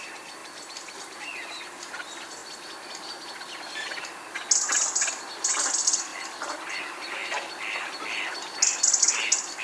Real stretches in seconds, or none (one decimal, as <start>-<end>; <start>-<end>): 0.0-9.6

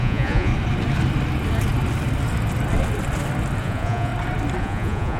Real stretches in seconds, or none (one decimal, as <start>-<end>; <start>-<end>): 0.5-3.6; 4.1-4.6

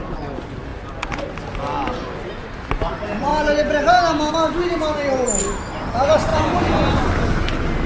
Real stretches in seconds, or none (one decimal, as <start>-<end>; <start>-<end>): 0.0-7.9

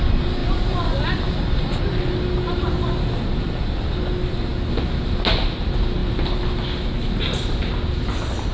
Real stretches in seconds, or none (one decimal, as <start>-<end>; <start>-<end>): 0.0-8.5